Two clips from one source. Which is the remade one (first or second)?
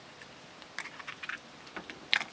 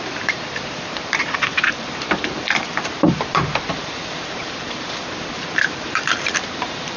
second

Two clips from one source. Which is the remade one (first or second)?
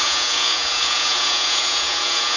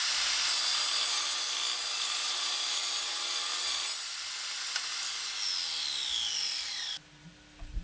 first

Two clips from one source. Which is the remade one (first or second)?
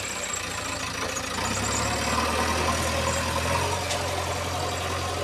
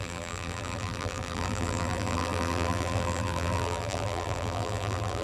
second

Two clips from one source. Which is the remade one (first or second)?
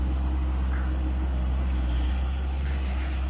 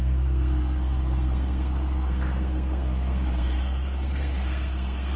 second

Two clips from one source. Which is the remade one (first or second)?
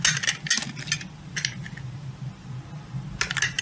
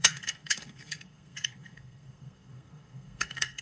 second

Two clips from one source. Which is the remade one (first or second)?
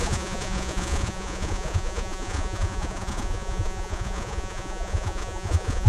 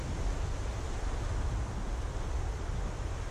first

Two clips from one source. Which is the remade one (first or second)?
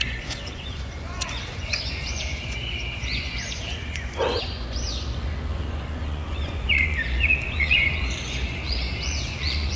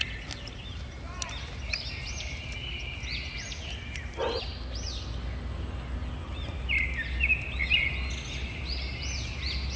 first